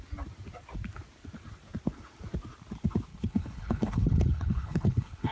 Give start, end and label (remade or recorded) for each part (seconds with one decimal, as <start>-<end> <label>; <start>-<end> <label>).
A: 0.0-3.1 recorded; 3.1-5.3 remade